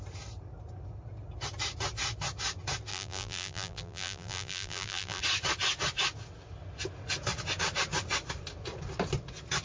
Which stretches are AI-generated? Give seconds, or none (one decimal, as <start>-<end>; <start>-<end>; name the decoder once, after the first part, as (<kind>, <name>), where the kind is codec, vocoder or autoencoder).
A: 2.9-5.2 (vocoder, BigVGAN v2)